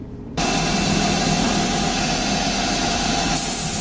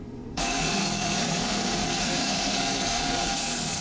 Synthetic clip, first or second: second